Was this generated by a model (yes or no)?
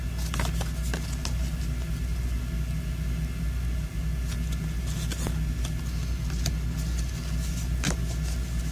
no